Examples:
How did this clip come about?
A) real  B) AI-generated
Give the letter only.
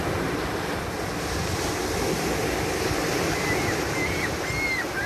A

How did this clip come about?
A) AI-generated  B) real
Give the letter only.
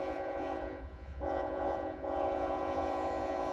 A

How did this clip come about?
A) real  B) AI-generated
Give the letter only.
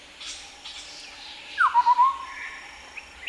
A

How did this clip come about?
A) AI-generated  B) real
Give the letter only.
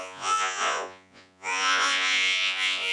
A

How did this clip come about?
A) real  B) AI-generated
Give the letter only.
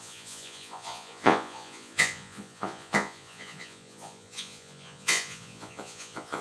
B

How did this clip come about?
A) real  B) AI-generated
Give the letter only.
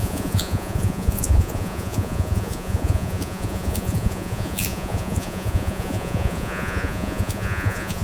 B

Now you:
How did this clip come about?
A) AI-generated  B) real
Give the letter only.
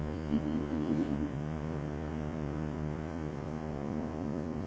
A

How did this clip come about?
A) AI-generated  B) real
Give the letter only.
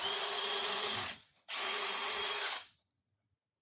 A